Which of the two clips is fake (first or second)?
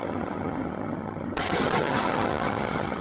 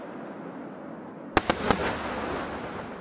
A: first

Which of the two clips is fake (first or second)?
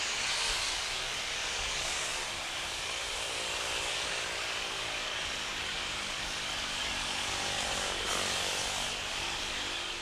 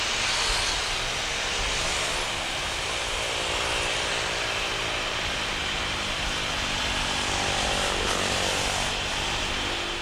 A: first